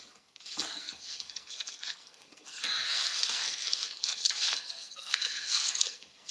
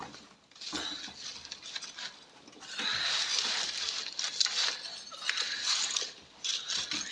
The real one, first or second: second